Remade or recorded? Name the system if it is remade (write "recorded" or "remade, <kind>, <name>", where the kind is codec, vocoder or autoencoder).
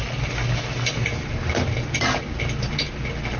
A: recorded